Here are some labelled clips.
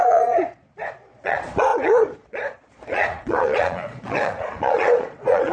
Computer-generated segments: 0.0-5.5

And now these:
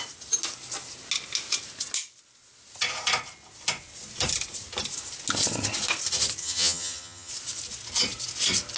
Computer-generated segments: 6.4-7.3